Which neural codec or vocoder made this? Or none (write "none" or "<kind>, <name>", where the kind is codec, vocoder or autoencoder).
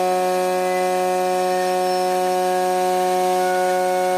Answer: none